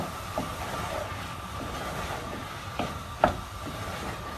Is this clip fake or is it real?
fake